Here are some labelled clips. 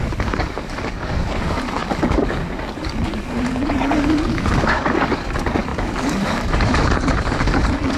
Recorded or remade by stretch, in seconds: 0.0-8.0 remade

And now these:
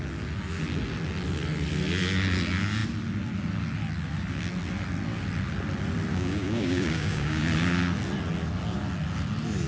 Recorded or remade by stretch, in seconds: 0.0-6.1 recorded; 6.1-7.4 remade; 7.4-9.7 recorded

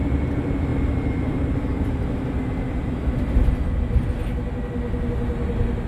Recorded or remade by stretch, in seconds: 0.0-5.9 recorded

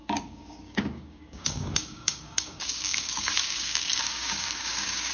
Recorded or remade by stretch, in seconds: 0.0-5.1 remade

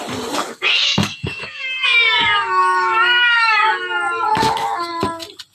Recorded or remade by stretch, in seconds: 0.0-0.4 recorded; 0.4-3.7 remade; 3.7-4.3 recorded; 4.3-4.9 remade; 4.9-5.5 recorded

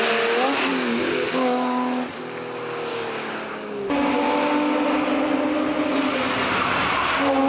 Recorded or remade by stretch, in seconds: 0.0-2.9 recorded; 2.9-4.1 remade; 4.1-7.5 recorded